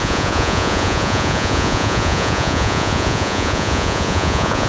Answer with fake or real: fake